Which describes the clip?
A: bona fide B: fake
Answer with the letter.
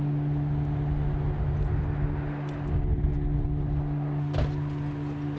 A